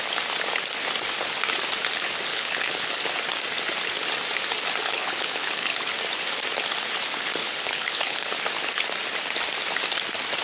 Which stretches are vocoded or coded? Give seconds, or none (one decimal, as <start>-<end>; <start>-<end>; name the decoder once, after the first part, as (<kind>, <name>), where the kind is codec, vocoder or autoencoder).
2.3-3.0 (codec, HILCodec); 4.8-5.9; 7.4-8.3